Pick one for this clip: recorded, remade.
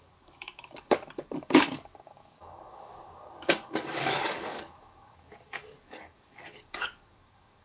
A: remade